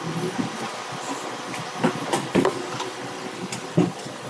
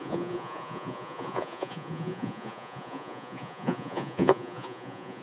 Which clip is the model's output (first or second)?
second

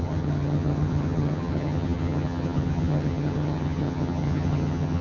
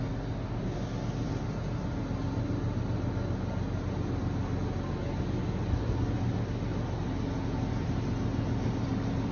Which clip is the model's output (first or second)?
first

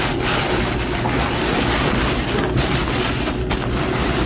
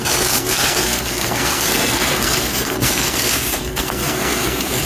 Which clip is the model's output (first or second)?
second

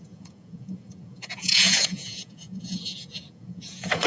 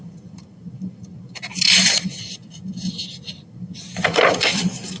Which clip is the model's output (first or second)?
first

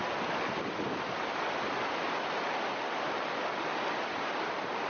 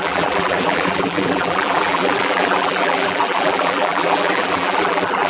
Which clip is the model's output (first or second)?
second